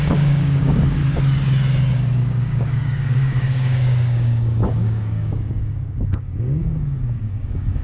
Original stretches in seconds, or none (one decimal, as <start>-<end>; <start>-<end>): 1.0-2.3